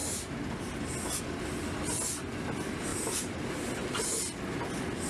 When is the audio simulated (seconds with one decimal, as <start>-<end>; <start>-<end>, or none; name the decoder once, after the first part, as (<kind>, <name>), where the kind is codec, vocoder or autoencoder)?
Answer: 2.9-4.4 (vocoder, BigVGAN v2)